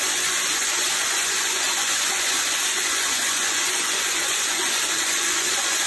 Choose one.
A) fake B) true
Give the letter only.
A